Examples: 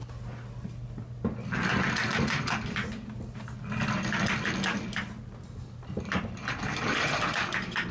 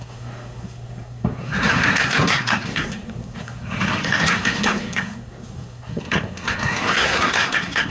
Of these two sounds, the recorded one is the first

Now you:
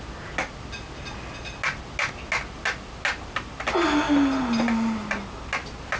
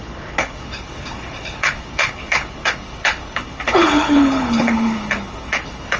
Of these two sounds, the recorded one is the first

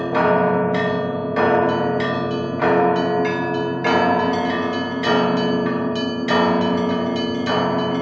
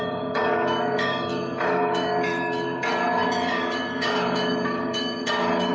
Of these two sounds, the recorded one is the first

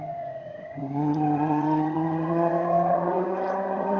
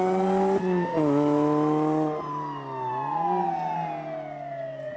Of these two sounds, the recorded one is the second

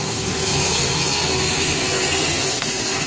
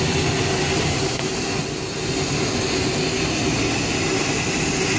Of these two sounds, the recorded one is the second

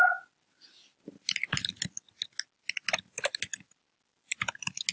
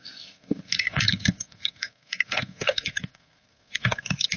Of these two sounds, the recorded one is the first